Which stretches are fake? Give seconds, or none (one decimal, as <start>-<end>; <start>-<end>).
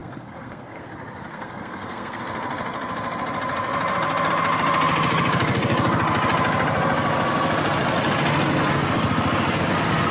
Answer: 0.0-0.9; 1.3-2.2